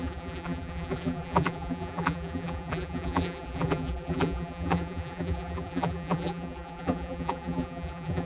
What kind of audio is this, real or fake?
fake